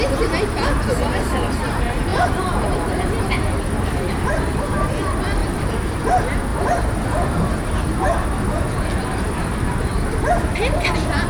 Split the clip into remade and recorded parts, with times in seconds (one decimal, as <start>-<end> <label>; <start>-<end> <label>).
0.0-2.1 recorded; 2.1-3.4 remade; 3.4-5.4 recorded; 5.4-6.0 remade; 6.0-11.3 recorded